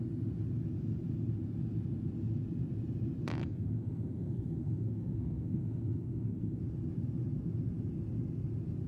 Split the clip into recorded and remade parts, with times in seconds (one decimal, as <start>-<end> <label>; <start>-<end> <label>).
0.0-3.4 recorded; 3.4-6.6 remade; 6.6-8.9 recorded